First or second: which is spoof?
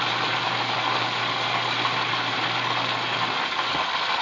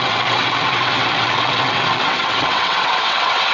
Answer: second